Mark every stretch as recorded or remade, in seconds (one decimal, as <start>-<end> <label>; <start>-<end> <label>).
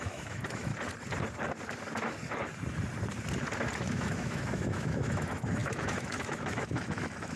0.0-0.7 remade; 0.7-3.9 recorded; 3.9-7.4 remade